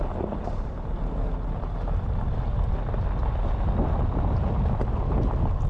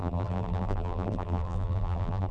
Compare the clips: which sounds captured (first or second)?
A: first